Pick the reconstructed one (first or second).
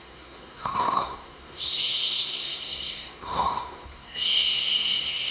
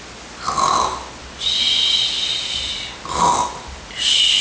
first